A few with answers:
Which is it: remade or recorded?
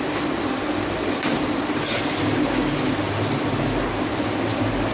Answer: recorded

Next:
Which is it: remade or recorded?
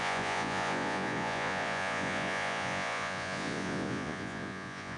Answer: remade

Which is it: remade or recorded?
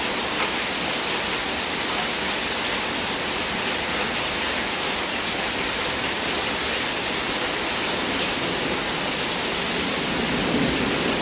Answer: recorded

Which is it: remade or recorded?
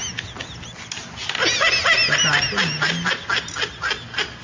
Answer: recorded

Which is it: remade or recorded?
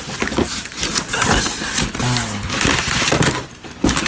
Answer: recorded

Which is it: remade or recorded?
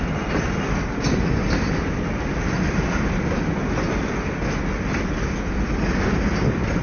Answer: recorded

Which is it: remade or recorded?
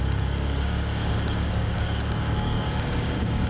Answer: remade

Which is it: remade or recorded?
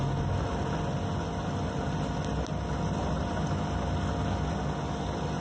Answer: recorded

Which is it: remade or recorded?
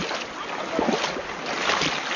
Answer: recorded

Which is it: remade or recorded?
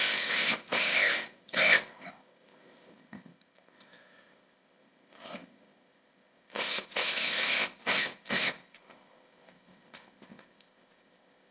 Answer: remade